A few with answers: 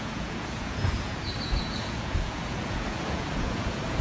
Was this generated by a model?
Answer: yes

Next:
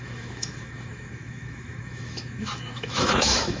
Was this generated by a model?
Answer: yes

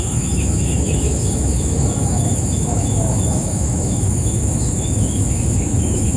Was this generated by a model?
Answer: yes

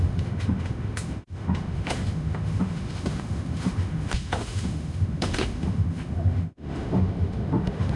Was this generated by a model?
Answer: yes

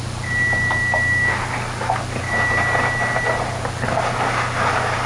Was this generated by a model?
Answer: no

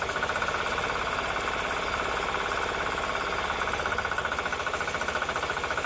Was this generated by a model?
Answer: no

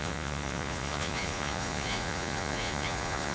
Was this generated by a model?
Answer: yes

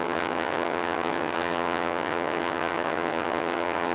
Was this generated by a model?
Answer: yes